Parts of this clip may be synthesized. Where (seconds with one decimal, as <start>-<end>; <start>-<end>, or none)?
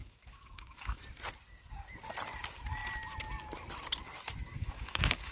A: 0.0-1.0; 4.5-5.3